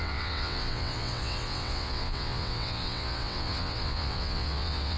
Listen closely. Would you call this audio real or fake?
fake